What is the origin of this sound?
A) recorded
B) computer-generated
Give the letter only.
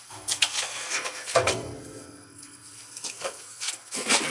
B